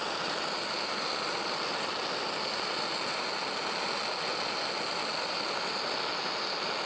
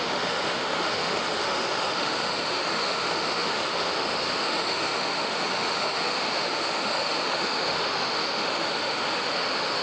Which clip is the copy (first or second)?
second